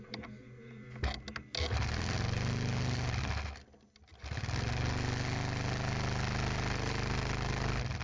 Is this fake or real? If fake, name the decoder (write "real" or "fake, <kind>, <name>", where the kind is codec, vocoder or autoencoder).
real